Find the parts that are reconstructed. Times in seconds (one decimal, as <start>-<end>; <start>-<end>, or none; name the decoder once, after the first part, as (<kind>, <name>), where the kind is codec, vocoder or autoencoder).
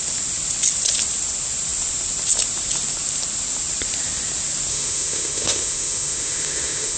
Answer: 4.7-7.0 (autoencoder, DAC-VAE)